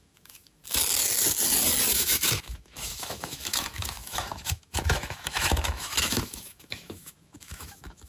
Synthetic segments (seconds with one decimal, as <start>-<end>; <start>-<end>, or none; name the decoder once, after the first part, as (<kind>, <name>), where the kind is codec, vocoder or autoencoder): 0.0-0.6 (autoencoder, DAC-VAE); 1.9-8.1